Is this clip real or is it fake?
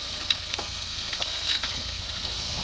fake